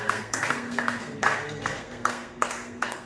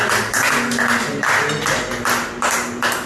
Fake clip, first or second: first